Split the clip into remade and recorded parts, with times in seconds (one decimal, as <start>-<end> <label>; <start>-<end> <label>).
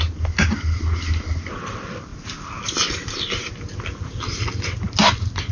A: 0.0-5.5 recorded